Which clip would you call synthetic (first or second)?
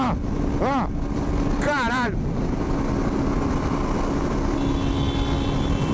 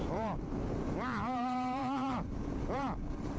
second